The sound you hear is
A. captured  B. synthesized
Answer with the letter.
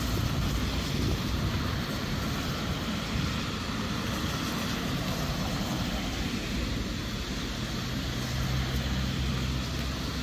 A